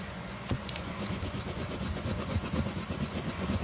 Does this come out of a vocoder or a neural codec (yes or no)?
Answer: yes